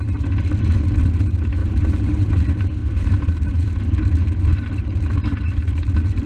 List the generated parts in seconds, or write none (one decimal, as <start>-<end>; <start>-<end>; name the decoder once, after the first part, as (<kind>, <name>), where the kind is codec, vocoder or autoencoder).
1.6-2.3 (vocoder, BigVGAN v2); 2.8-3.8